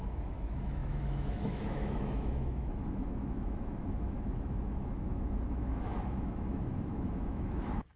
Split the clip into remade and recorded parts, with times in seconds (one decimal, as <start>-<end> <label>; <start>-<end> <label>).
0.0-8.0 remade